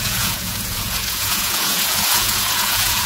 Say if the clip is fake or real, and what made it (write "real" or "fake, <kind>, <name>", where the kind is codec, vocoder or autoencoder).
fake, vocoder, Vocos